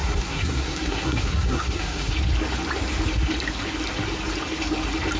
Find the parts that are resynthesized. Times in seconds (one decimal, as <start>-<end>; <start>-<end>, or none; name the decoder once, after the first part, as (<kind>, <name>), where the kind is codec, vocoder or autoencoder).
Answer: 0.0-2.1 (codec, SNAC)